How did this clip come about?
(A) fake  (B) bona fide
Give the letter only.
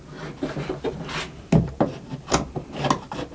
B